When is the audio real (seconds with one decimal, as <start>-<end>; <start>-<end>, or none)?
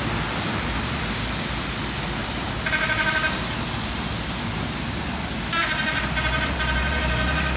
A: 0.0-2.2; 5.0-7.6